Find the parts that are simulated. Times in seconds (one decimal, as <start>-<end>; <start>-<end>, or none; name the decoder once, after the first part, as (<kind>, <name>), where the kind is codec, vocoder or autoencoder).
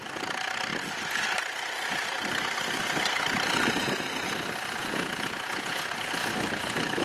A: 4.8-5.9 (vocoder, Vocos)